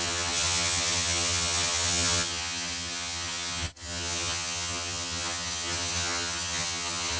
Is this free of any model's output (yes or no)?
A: no